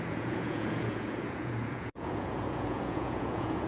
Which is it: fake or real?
fake